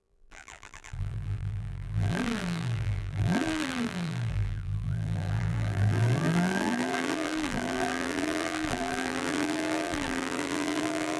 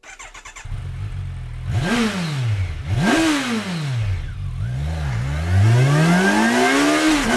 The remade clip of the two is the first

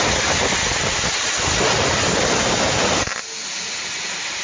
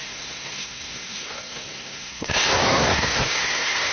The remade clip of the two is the second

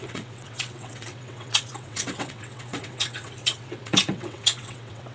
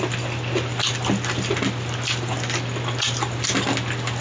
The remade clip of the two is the first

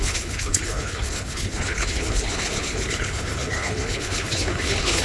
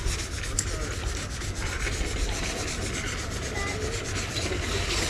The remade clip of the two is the first